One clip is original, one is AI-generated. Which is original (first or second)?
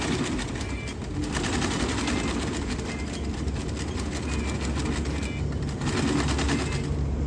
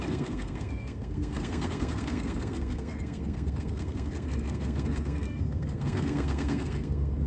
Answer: first